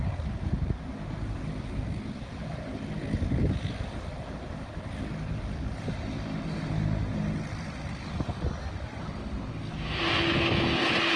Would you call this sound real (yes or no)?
yes